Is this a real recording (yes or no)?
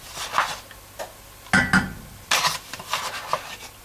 yes